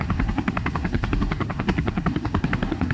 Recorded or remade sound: remade